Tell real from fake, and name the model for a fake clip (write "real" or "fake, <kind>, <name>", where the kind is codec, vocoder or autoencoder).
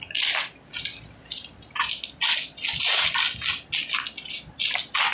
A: real